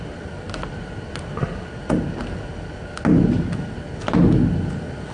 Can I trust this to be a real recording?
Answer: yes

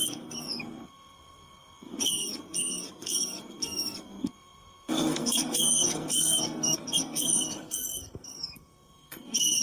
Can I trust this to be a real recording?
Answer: no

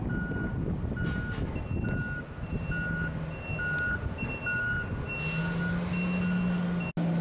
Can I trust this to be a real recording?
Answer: yes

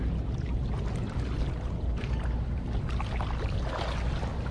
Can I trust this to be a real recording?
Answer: yes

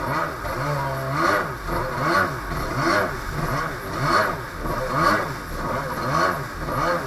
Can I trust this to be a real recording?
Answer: yes